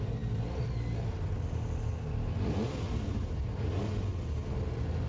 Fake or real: real